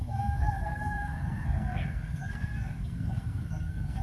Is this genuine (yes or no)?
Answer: no